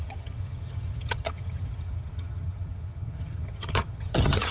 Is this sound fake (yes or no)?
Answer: yes